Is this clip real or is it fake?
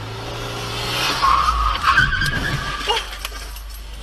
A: real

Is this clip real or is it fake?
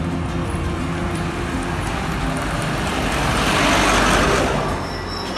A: real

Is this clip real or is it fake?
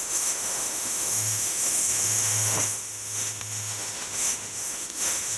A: fake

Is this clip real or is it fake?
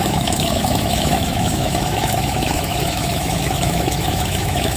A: fake